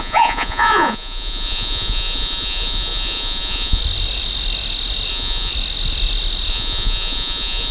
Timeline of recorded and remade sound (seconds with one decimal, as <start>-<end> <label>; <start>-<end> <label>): 0.0-3.8 remade; 3.8-5.1 recorded; 5.1-5.5 remade; 5.5-6.5 recorded; 6.5-7.7 remade